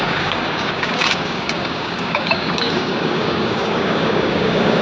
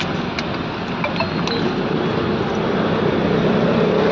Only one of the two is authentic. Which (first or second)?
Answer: second